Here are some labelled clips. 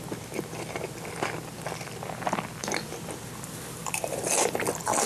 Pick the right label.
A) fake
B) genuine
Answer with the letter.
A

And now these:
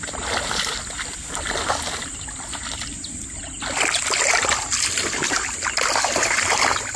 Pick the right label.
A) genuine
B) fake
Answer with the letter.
A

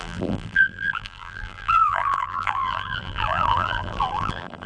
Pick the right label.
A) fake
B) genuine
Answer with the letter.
A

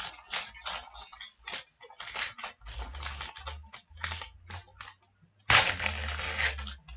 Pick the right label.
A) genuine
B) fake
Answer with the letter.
A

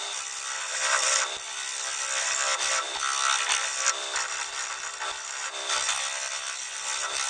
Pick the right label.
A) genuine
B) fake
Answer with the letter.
B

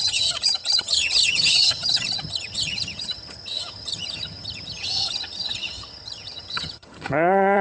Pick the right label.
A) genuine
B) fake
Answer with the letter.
B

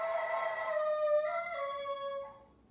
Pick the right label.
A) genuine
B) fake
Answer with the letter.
A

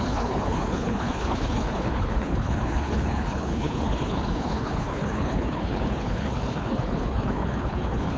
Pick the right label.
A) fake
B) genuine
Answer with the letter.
A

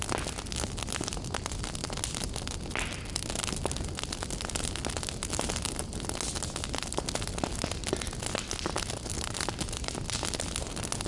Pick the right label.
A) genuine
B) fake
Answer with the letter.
A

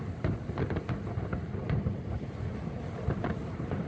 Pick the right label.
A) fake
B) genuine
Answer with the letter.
B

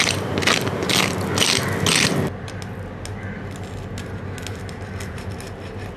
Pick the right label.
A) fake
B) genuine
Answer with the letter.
B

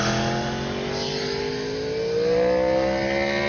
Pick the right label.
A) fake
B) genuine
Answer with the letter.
B